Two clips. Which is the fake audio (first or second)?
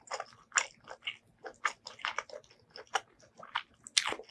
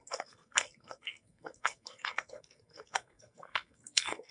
second